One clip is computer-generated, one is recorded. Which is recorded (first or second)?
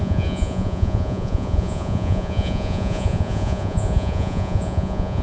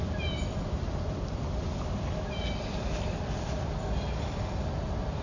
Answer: second